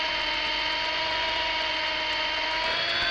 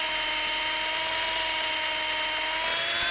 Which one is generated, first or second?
first